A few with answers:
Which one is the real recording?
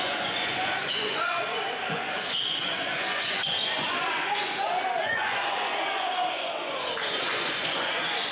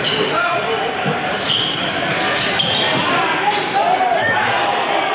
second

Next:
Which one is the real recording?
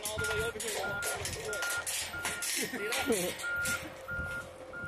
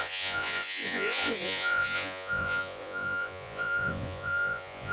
first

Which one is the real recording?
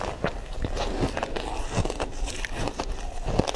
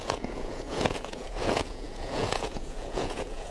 first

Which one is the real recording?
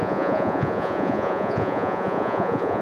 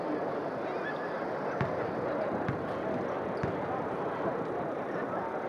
second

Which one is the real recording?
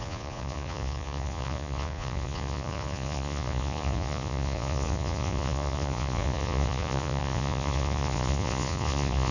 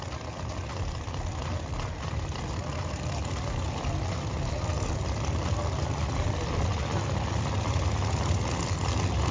second